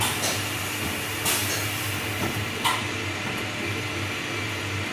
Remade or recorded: recorded